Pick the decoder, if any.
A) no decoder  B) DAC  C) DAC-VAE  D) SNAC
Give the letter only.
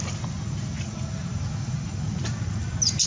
A